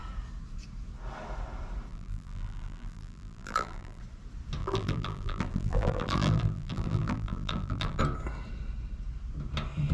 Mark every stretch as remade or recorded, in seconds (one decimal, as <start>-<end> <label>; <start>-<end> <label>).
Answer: 0.0-1.9 recorded; 1.9-4.0 remade; 4.0-4.6 recorded; 4.6-8.0 remade; 8.0-9.9 recorded